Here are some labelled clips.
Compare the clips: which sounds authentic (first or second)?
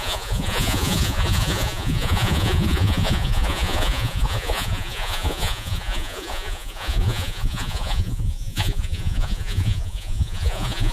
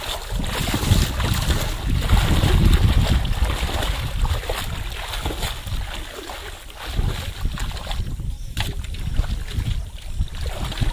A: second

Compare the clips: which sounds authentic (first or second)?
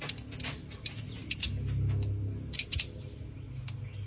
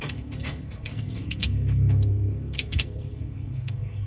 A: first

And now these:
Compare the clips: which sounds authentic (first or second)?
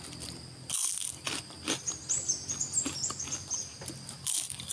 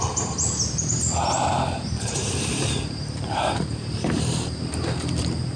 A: first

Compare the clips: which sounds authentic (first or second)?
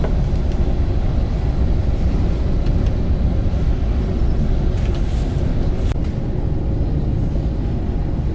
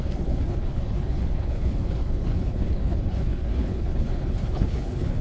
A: first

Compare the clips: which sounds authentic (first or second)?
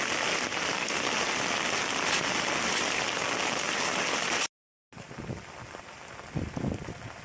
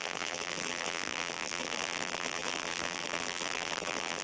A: first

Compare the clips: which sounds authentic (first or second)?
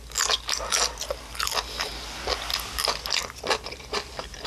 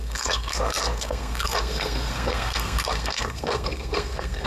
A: first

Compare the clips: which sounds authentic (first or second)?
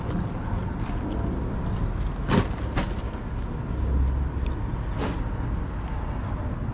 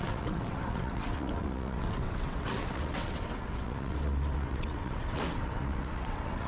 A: first